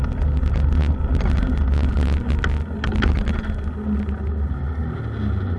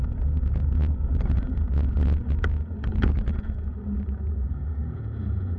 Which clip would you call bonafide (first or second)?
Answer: first